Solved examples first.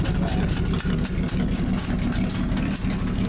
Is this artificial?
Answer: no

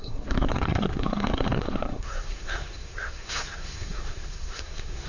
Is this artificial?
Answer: yes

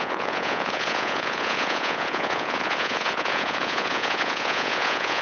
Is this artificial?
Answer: yes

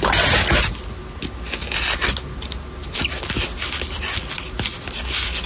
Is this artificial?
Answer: no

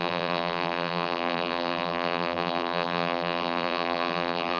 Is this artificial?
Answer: yes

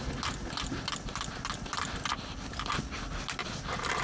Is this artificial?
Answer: no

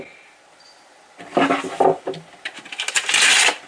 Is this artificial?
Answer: no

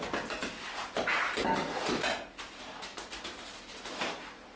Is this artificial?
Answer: no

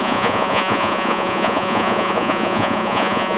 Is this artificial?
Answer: yes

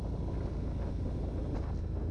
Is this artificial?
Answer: no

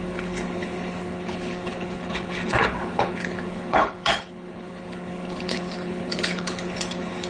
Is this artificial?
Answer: yes